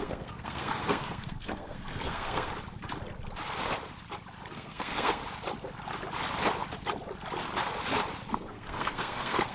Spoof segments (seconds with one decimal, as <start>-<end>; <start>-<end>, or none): 0.0-2.5; 4.5-5.2; 8.3-9.5